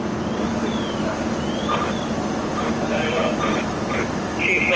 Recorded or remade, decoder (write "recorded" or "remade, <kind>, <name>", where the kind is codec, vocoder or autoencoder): recorded